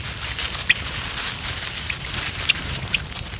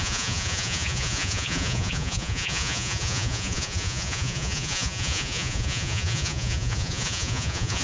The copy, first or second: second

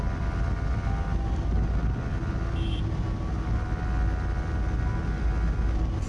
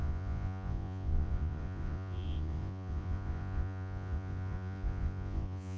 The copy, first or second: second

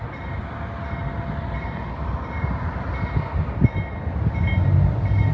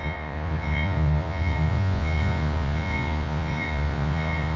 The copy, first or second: second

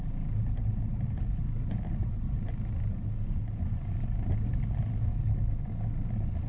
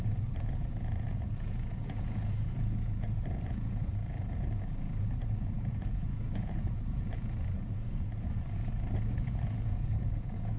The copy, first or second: second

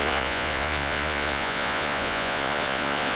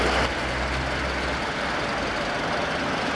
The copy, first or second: first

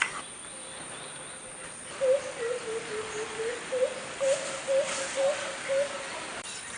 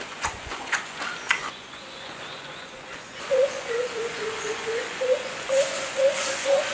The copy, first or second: second